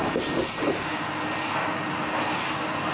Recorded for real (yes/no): yes